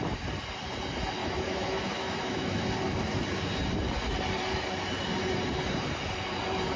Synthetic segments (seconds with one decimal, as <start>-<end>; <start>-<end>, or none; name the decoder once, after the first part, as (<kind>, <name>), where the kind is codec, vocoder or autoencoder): 1.2-2.7 (autoencoder, DAC-VAE)